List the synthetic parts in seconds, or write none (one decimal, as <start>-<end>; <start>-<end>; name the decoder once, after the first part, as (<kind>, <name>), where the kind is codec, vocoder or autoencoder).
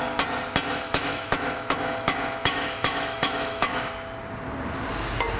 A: 0.7-3.9 (autoencoder, DAC-VAE)